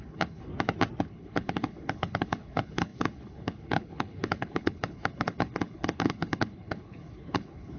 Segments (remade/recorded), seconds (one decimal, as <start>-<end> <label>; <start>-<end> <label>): 0.0-0.5 remade; 0.5-1.0 recorded; 1.0-7.8 remade